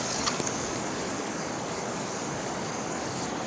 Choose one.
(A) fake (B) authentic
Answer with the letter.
A